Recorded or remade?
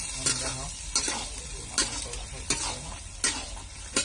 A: recorded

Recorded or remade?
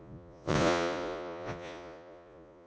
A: remade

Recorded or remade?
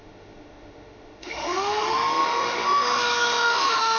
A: remade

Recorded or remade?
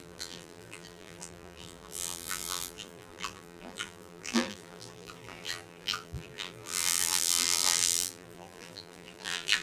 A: remade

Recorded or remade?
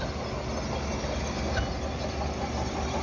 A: recorded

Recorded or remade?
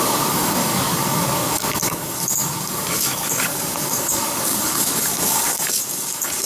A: remade